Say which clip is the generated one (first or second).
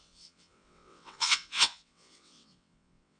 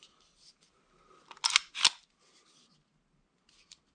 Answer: first